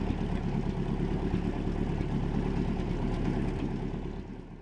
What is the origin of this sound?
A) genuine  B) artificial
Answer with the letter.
A